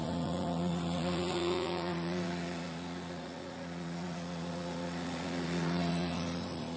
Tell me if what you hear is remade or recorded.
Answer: remade